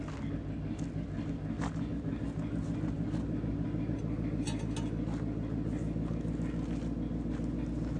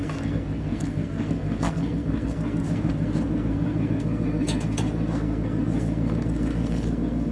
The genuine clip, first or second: first